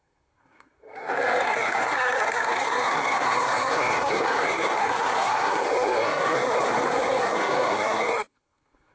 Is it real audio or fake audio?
fake